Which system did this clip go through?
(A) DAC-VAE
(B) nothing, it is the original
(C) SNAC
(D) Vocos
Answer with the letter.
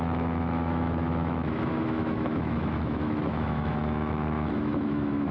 A